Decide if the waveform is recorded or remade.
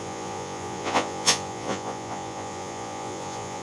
remade